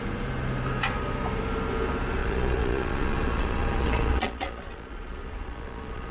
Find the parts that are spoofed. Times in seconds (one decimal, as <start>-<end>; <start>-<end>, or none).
2.2-6.1